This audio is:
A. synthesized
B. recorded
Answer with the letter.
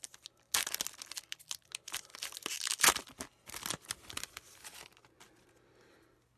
B